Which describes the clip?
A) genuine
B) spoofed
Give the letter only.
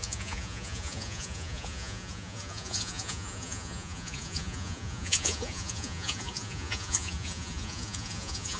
B